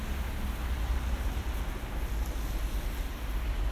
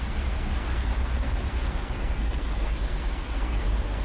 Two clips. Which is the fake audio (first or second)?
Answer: second